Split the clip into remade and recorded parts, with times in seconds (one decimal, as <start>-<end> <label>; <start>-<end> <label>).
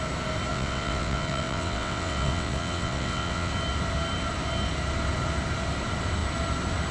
0.0-0.5 recorded; 0.5-3.5 remade; 3.5-6.9 recorded